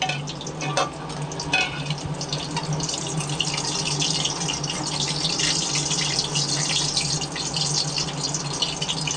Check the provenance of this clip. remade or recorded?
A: recorded